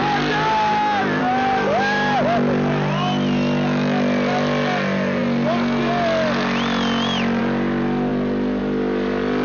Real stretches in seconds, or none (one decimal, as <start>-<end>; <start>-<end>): 0.0-9.4